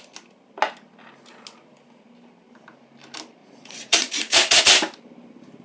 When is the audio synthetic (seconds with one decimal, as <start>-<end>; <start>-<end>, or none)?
3.4-4.6